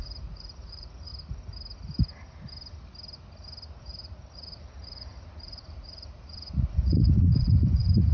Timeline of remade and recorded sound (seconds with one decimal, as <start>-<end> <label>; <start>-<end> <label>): 0.0-1.1 remade; 1.1-3.8 recorded; 3.8-8.1 remade